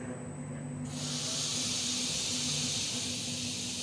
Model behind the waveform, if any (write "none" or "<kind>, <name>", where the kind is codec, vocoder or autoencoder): none